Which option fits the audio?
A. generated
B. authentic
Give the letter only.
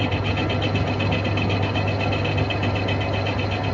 B